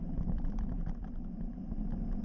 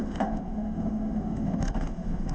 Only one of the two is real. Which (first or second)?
first